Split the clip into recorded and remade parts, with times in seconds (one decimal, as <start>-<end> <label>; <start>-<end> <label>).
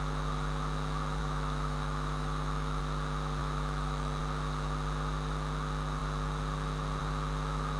0.0-1.2 recorded; 1.2-2.8 remade; 2.8-3.4 recorded; 3.4-4.2 remade; 4.2-7.8 recorded